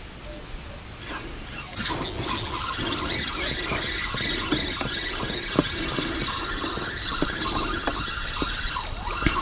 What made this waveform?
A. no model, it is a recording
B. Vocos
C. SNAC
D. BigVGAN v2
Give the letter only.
A